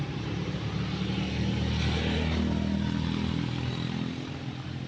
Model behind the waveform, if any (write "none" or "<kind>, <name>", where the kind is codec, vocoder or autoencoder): none